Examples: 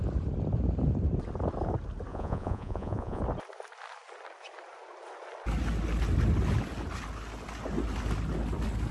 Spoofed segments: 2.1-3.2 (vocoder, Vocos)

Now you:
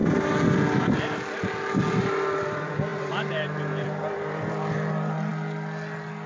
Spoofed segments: 2.4-5.3 (vocoder, BigVGAN v2)

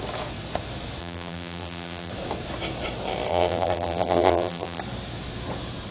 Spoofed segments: 1.0-2.1 (vocoder, BigVGAN v2); 3.3-4.8

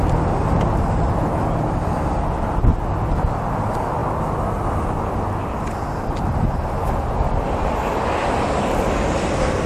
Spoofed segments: none

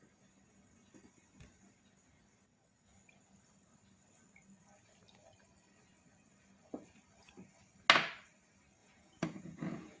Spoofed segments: 8.8-10.0 (vocoder, Vocos)